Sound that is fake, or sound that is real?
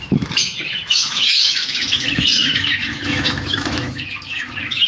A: fake